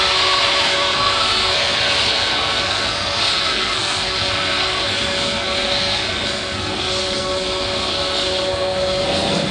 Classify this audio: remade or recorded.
remade